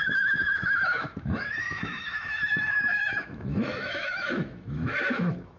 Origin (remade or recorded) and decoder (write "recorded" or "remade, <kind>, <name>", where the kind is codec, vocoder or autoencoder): remade, autoencoder, DAC-VAE